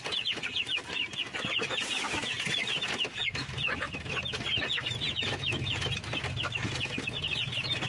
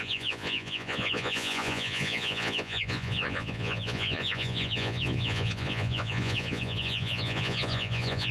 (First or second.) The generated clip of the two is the second